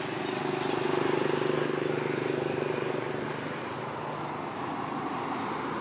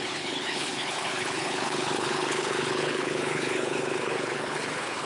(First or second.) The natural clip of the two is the first